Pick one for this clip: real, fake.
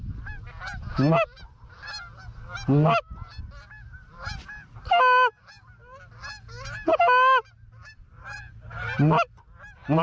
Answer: real